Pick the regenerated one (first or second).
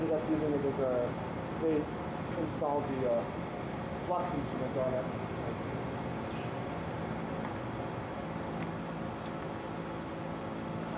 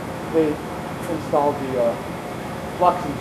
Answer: second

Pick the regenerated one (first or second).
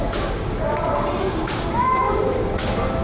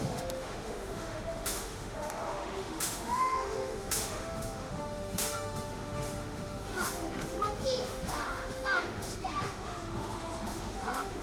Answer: second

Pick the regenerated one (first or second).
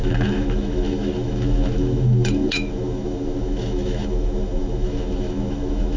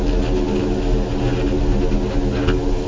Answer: first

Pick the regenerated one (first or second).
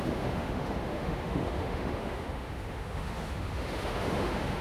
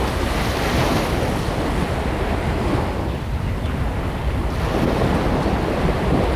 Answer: first